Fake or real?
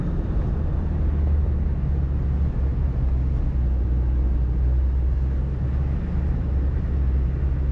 real